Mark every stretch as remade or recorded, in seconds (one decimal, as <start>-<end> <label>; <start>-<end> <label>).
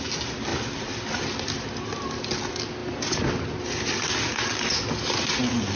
0.0-0.5 recorded; 0.5-1.0 remade; 1.0-5.8 recorded